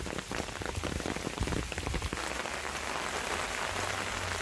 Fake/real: real